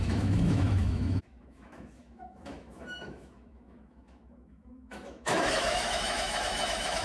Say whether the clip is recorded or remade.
remade